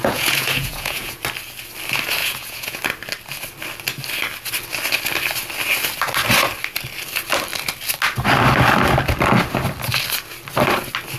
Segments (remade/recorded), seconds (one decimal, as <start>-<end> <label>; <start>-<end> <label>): 0.0-1.2 remade; 1.2-2.2 recorded; 2.2-2.8 remade; 2.8-11.2 recorded